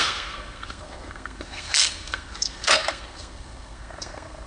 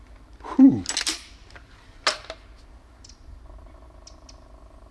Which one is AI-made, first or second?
first